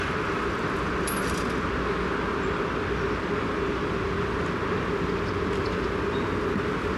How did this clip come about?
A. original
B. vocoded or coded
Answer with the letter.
A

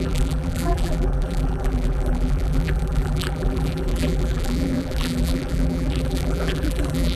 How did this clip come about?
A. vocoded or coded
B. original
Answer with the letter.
A